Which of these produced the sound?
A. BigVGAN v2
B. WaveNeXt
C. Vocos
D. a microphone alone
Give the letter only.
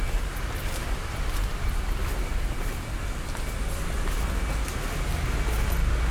D